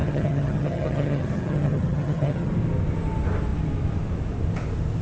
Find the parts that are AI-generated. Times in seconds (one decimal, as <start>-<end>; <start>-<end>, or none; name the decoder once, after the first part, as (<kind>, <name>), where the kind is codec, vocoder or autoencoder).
0.0-2.5 (vocoder, HiFi-GAN)